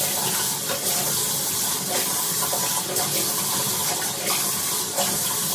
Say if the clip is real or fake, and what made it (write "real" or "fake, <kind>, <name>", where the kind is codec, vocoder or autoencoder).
real